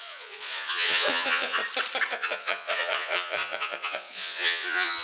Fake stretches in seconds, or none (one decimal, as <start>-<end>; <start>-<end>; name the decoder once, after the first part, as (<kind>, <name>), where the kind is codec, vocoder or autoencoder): 0.0-1.6 (vocoder, Vocos); 2.1-5.0